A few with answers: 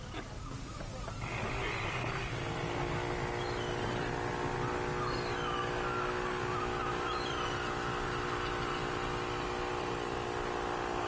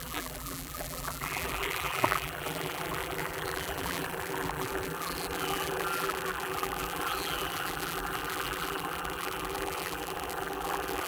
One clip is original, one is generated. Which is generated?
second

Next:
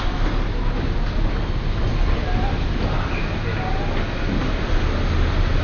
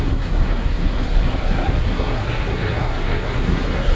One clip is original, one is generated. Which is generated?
second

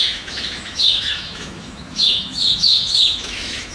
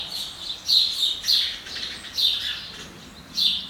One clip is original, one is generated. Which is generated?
first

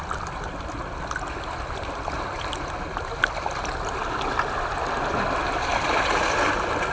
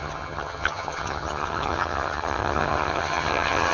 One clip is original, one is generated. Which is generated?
second